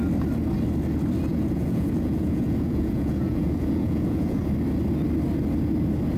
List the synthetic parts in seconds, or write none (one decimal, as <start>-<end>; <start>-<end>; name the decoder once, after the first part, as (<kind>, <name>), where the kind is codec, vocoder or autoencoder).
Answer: 1.3-4.4 (vocoder, Vocos)